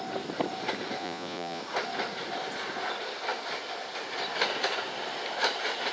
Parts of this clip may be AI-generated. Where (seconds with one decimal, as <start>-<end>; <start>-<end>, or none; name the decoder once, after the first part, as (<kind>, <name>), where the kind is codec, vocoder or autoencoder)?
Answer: 1.0-1.6 (vocoder, Vocos)